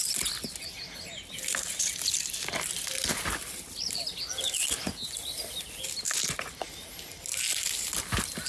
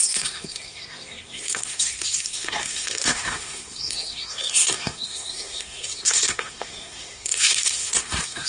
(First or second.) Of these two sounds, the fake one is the second